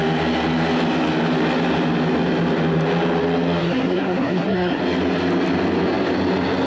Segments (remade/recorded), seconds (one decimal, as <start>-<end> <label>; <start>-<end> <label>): 0.0-3.6 recorded; 3.6-4.8 remade; 4.8-6.7 recorded